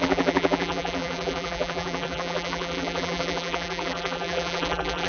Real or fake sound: fake